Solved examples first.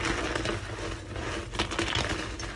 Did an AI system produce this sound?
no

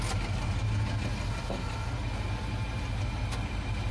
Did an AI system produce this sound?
no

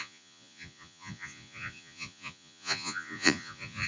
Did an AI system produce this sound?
yes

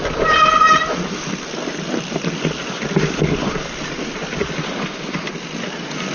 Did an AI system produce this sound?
no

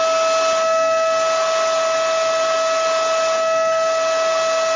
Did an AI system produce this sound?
no